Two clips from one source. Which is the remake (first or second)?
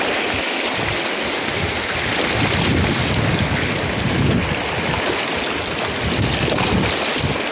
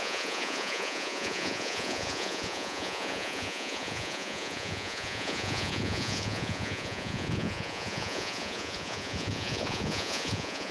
second